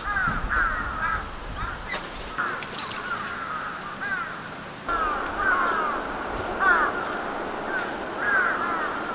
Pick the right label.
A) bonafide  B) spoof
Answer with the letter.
A